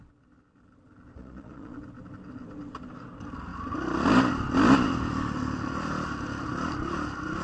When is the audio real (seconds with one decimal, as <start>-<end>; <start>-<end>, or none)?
0.0-1.1; 1.8-7.4